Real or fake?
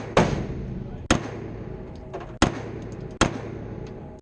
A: real